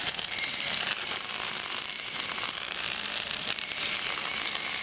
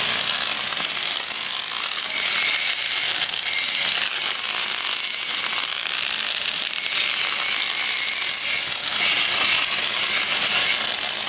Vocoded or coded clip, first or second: first